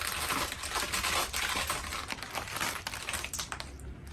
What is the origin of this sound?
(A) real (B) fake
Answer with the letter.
A